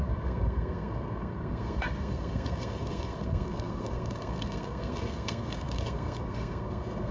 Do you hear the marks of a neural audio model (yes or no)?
yes